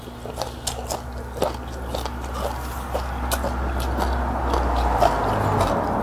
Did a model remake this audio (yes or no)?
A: no